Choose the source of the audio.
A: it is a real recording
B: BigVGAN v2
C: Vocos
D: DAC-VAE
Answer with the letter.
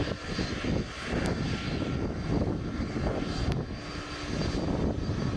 A